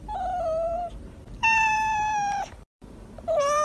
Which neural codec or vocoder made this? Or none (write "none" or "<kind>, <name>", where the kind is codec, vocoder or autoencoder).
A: vocoder, BigVGAN v2